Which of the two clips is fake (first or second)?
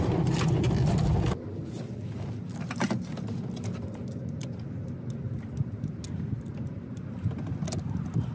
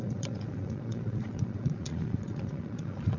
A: second